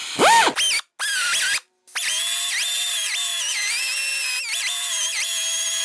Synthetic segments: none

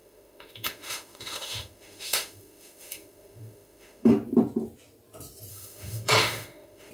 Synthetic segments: 0.0-4.1 (autoencoder, DAC-VAE); 5.5-6.9